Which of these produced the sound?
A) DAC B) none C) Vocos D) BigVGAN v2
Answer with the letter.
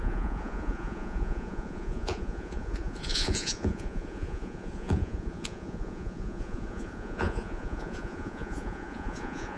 C